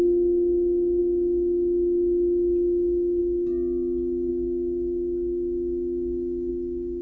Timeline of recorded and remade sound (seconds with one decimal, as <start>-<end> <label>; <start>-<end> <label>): 0.0-7.0 recorded